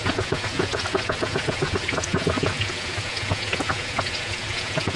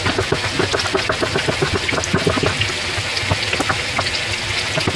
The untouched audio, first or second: second